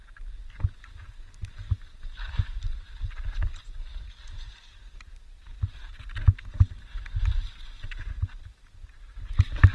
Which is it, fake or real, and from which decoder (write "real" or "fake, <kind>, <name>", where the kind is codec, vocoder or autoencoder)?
real